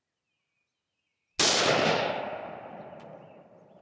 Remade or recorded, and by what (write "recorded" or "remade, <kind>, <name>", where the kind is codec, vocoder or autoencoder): recorded